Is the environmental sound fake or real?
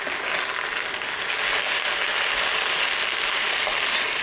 real